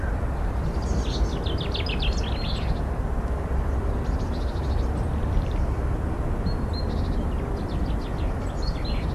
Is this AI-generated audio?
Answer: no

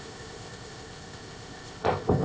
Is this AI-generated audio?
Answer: yes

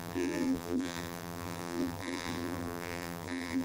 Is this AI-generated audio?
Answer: yes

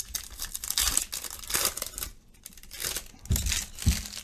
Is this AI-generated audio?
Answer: no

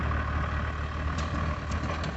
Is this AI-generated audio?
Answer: no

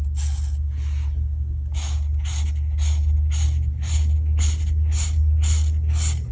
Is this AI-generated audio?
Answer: no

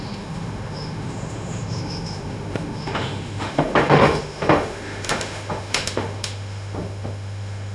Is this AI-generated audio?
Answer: yes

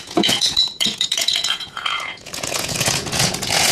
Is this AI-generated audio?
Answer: yes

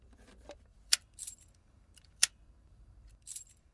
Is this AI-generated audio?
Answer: yes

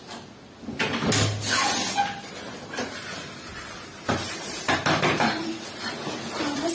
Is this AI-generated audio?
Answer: no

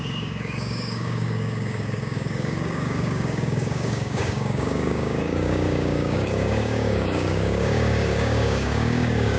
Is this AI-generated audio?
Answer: yes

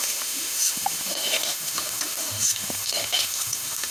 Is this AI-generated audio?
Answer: yes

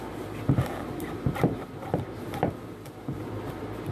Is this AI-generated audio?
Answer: no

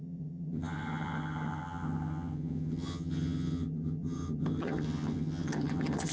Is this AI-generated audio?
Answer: yes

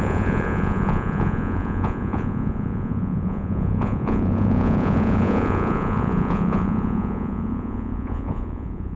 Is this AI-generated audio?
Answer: yes